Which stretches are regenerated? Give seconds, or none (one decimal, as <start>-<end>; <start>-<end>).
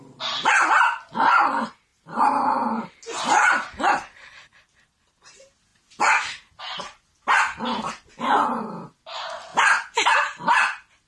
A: 1.9-2.9